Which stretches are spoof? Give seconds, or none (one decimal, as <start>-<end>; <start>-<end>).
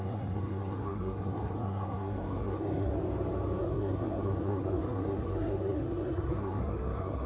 0.0-2.9; 3.6-7.3